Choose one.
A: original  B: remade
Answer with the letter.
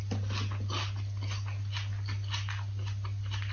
A